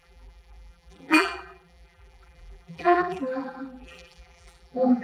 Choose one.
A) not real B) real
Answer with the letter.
A